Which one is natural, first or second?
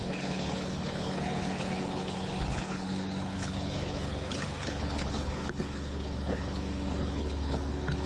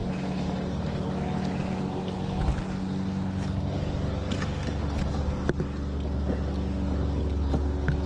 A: second